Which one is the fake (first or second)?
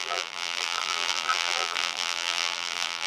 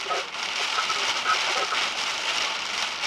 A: first